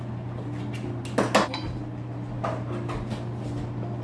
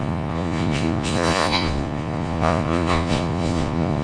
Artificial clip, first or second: second